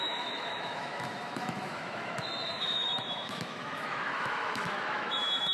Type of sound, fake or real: fake